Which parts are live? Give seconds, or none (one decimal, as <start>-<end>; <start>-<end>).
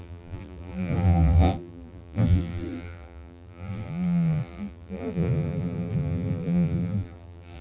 none